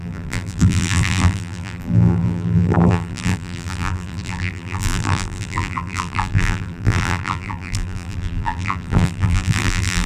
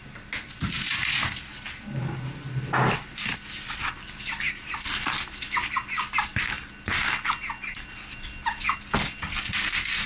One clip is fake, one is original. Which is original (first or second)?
second